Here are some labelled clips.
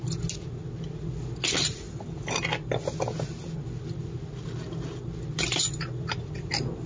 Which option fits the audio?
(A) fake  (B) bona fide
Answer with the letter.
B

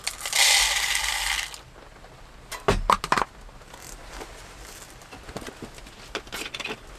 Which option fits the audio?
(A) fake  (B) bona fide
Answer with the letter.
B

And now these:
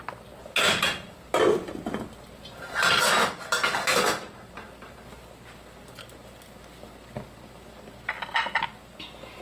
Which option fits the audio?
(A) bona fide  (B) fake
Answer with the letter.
A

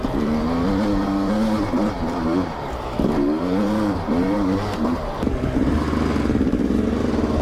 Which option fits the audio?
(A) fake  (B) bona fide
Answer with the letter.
A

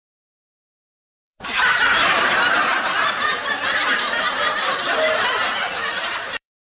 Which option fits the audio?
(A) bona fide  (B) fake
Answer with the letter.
B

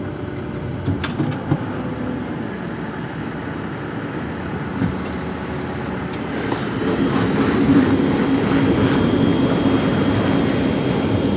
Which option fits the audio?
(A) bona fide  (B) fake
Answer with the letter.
A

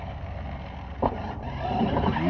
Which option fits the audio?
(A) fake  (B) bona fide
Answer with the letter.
B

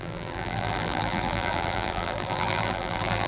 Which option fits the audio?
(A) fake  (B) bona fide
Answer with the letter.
A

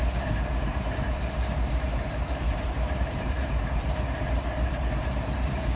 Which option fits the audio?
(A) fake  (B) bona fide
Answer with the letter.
A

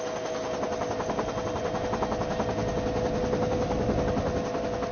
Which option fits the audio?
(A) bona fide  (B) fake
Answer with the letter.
A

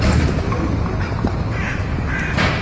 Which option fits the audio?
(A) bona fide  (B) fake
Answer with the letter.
A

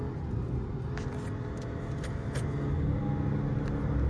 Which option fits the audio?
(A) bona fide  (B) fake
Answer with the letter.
A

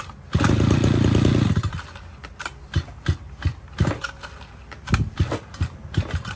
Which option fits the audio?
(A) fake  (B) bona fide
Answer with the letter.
B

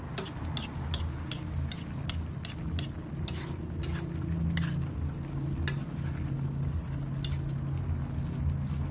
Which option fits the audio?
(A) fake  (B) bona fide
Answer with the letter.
B